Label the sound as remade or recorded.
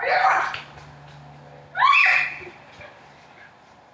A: recorded